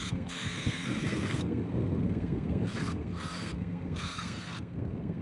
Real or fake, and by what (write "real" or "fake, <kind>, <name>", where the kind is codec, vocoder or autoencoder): fake, codec, SNAC